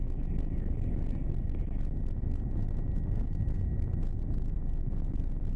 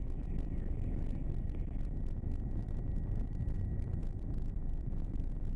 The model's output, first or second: second